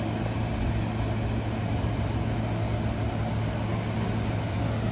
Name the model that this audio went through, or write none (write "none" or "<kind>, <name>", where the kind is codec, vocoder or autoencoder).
none